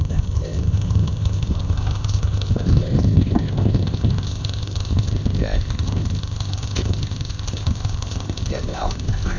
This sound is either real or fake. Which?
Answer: fake